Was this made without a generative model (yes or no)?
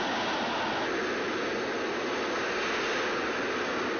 yes